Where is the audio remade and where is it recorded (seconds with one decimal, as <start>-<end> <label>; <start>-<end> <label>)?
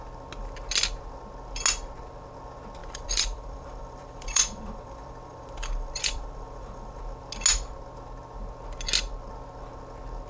0.0-2.8 recorded; 2.8-7.0 remade; 7.0-10.3 recorded